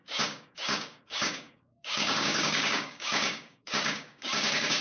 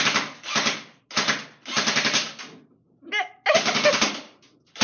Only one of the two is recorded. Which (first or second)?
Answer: second